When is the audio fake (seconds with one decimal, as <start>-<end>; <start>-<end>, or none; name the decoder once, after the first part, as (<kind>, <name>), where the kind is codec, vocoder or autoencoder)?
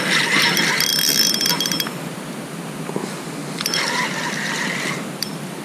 0.0-0.9 (vocoder, BigVGAN v2); 1.5-3.4; 3.9-5.6